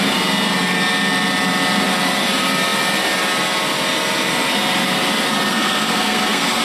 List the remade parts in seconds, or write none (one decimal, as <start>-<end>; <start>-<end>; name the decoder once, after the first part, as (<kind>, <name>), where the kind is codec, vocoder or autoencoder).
5.5-6.6 (codec, SNAC)